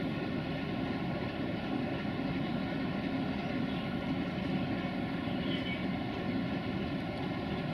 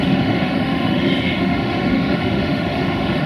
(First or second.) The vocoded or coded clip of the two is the second